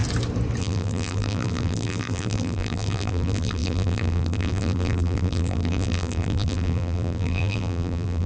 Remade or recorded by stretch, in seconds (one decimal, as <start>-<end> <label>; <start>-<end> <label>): 0.0-0.6 recorded; 0.6-8.3 remade

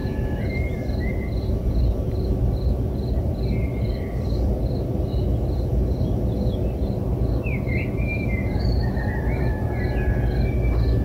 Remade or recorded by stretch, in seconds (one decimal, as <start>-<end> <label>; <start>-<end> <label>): 0.0-8.1 recorded; 8.1-9.7 remade; 9.7-11.0 recorded

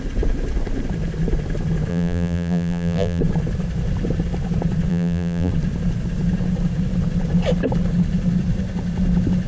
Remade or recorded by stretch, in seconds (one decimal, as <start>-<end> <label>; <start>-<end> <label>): 0.0-1.9 recorded; 1.9-3.2 remade; 3.2-4.9 recorded; 4.9-5.5 remade; 5.5-9.5 recorded